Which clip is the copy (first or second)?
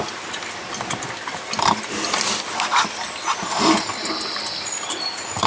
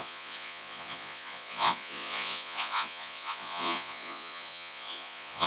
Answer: second